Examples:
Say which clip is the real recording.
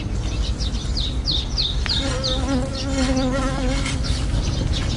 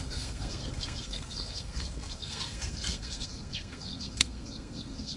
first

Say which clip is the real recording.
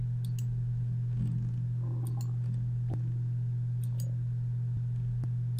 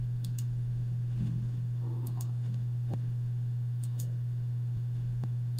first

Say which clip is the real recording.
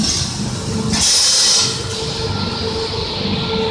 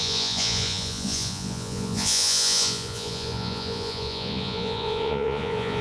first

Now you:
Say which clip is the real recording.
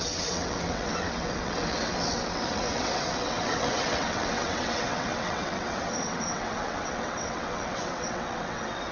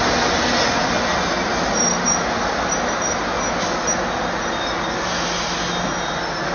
second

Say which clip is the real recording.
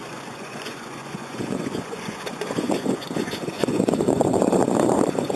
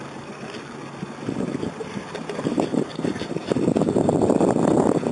second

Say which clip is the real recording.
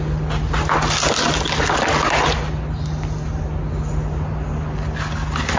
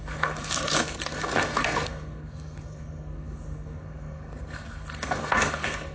first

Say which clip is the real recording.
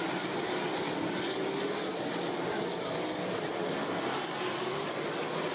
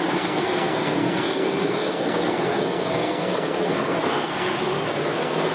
first